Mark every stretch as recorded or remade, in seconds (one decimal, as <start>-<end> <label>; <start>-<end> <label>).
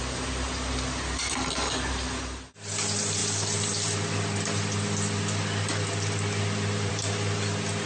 0.0-7.9 recorded